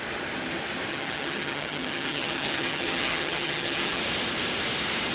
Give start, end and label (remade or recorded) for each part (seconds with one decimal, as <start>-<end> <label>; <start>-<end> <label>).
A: 0.0-0.9 recorded; 0.9-4.0 remade; 4.0-5.1 recorded